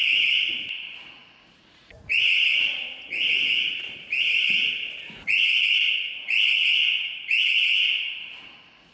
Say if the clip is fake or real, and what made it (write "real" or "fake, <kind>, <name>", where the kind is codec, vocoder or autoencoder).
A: fake, vocoder, Vocos